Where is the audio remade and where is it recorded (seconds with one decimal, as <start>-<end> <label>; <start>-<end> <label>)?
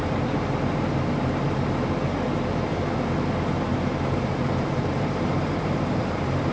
0.0-2.7 remade; 2.7-3.7 recorded; 3.7-6.5 remade